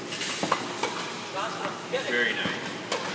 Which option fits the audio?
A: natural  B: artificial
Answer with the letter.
A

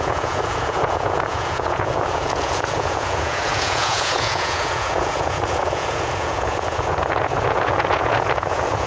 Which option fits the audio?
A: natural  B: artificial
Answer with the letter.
B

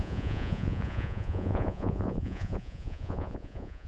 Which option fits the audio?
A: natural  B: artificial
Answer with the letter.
B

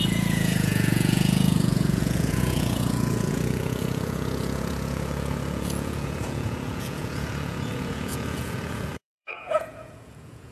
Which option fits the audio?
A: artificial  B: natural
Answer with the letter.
A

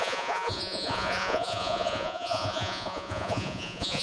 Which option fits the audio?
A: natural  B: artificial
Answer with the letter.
B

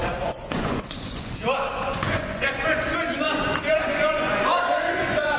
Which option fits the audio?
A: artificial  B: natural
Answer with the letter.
A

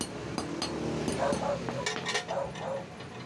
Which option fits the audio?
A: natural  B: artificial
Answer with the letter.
A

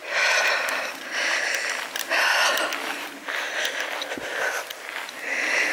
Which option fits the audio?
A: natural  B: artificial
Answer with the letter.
A